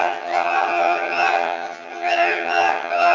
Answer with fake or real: fake